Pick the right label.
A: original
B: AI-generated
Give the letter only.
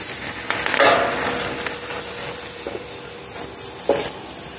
A